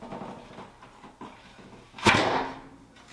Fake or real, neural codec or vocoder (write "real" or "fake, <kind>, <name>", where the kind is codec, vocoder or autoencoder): real